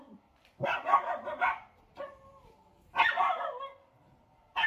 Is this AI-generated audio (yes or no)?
no